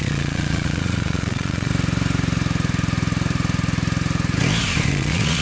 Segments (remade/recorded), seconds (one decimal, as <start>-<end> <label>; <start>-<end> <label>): 0.0-1.7 remade; 1.7-4.9 recorded; 4.9-5.4 remade

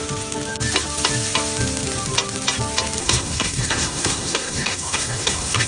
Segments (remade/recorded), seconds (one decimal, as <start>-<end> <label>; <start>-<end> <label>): 0.0-3.0 recorded; 3.0-5.7 remade